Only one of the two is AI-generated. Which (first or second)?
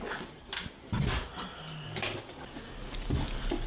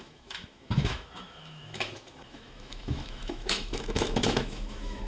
second